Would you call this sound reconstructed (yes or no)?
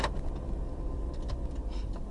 no